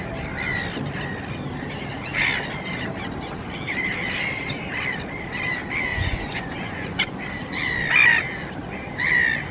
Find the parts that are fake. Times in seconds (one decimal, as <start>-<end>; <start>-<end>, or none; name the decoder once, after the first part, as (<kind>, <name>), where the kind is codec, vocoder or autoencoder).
5.9-7.2 (vocoder, Vocos)